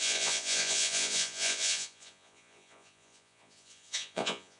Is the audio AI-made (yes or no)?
yes